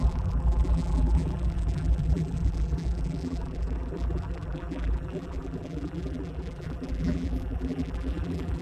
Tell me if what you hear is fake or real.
fake